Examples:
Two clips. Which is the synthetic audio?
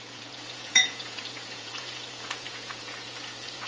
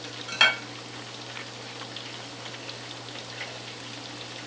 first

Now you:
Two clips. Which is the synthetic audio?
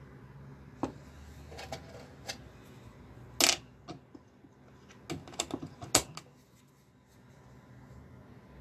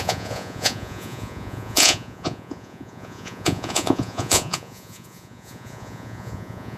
second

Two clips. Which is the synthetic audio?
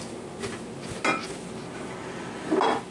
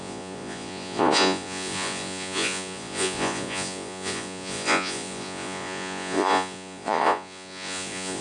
second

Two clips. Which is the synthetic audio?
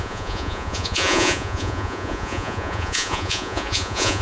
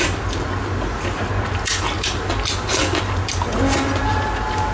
first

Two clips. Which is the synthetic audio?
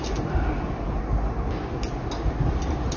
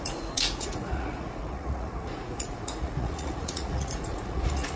second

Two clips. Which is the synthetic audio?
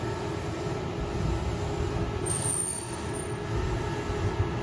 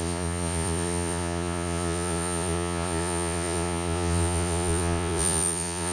second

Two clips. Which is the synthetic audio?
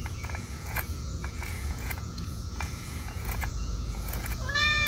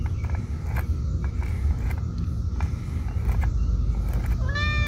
first